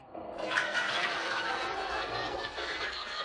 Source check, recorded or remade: remade